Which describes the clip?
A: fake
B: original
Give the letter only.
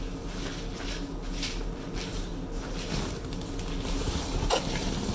B